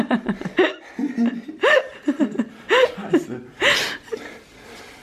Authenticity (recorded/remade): recorded